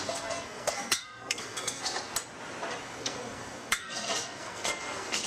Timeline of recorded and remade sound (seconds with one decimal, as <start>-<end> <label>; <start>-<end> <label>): 0.0-1.8 remade; 1.8-2.8 recorded; 2.8-5.3 remade